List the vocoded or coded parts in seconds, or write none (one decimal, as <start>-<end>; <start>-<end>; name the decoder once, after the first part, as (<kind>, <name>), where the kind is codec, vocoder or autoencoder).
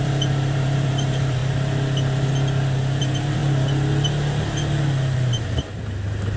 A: 0.0-1.4 (vocoder, BigVGAN v2); 3.0-3.4; 5.3-6.4